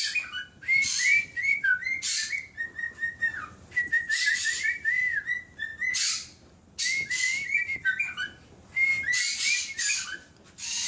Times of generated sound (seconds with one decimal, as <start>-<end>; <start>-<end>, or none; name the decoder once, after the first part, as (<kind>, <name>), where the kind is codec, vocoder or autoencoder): 0.0-1.7 (vocoder, BigVGAN v2); 3.2-5.7; 6.8-7.7; 10.5-10.9